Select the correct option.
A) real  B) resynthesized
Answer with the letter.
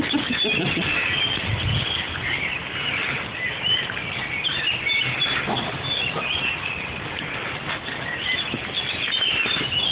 A